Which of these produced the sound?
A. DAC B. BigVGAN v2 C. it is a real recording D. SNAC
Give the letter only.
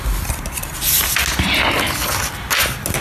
C